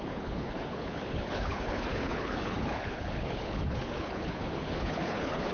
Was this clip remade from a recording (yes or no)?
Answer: yes